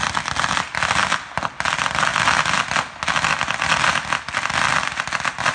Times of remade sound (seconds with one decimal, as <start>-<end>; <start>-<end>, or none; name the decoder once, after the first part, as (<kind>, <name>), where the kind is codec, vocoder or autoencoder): none